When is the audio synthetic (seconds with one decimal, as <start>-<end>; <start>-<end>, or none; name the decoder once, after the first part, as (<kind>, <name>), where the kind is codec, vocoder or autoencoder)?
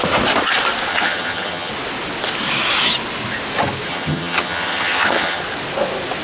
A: 0.9-1.7 (vocoder, HiFi-GAN); 3.9-5.4